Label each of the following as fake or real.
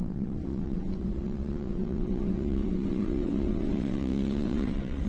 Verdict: fake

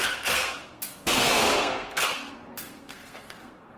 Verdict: fake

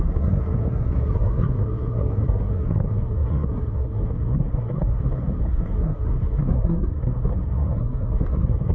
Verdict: fake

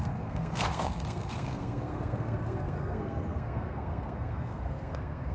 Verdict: fake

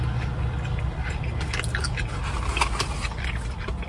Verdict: real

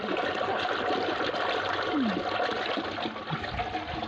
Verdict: real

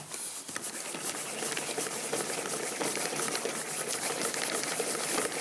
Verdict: real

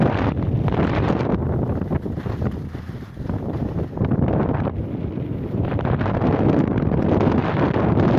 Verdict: real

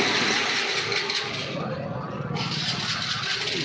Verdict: real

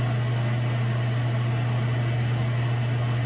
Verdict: real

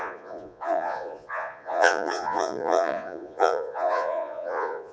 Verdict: fake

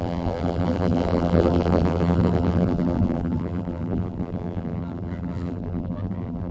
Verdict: fake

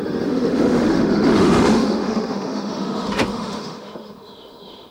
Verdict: fake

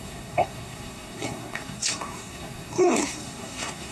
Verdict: fake